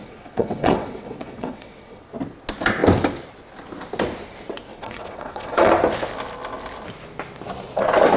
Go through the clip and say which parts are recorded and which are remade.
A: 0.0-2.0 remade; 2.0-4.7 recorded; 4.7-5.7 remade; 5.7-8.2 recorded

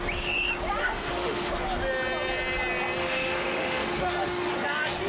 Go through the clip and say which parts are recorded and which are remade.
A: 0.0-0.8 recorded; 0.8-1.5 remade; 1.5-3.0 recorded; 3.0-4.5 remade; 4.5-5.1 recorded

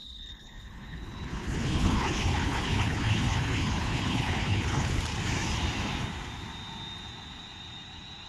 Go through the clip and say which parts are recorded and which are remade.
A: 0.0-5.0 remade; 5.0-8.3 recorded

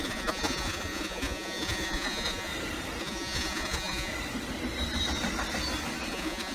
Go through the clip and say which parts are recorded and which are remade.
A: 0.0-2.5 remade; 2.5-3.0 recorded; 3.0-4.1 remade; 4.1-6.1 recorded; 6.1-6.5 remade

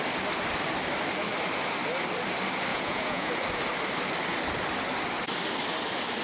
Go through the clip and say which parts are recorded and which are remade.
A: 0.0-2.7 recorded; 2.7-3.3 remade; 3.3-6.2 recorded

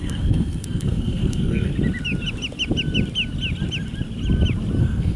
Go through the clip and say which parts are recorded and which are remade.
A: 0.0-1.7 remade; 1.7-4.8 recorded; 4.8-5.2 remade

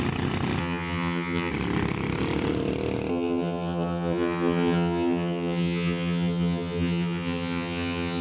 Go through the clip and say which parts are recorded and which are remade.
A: 0.0-0.6 recorded; 0.6-1.5 remade; 1.5-3.1 recorded; 3.1-8.2 remade